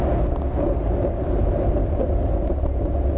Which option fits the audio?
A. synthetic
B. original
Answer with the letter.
B